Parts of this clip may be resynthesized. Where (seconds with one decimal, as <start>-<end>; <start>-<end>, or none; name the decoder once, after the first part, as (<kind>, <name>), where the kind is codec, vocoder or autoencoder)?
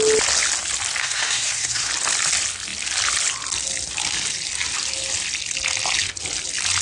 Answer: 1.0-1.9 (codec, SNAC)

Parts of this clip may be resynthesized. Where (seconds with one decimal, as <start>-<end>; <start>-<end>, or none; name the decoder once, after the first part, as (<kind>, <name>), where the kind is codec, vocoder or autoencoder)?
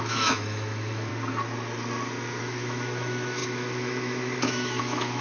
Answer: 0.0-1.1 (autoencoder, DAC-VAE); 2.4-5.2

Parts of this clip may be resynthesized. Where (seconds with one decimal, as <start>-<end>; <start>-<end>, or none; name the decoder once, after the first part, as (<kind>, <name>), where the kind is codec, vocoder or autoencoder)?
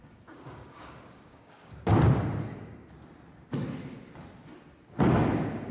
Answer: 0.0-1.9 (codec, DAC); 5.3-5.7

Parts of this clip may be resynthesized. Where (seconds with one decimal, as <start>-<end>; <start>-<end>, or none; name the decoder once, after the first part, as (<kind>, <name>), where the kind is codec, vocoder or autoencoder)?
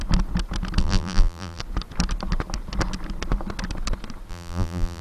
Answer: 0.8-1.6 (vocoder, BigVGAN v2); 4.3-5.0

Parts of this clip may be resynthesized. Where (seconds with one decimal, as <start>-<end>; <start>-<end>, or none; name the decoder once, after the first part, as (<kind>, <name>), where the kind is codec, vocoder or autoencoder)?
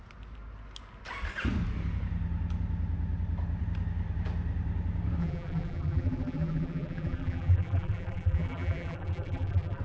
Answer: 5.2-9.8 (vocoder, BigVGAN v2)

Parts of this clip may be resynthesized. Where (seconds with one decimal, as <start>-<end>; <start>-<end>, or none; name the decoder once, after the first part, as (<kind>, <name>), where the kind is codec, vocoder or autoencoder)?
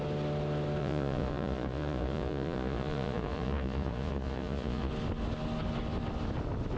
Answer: 0.8-4.9 (vocoder, Vocos)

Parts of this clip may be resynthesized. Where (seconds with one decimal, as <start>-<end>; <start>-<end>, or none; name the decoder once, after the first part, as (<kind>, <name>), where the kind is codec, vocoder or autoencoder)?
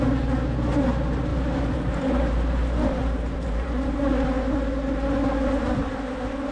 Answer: 1.3-4.0 (vocoder, BigVGAN v2)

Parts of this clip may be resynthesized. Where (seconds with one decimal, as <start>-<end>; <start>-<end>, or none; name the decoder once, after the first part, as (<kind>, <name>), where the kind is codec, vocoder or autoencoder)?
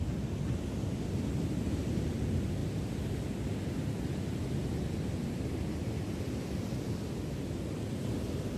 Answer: none